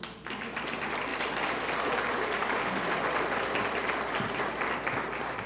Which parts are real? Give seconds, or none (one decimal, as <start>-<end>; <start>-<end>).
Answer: 0.0-1.1; 4.4-5.5